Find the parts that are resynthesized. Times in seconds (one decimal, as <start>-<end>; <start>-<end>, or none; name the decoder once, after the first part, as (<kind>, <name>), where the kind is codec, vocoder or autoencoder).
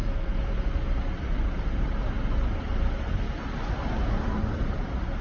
none